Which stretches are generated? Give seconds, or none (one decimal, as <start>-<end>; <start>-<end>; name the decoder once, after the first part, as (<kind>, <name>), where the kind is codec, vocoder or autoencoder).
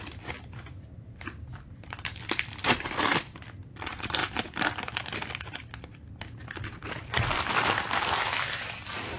0.0-9.2 (vocoder, BigVGAN v2)